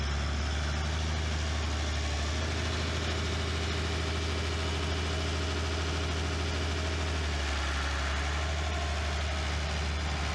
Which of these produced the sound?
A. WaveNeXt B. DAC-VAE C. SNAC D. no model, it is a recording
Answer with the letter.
D